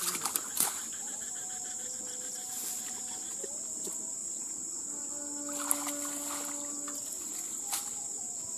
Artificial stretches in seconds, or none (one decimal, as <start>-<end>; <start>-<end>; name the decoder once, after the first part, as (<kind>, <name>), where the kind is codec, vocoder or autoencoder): 4.2-4.8 (vocoder, BigVGAN v2)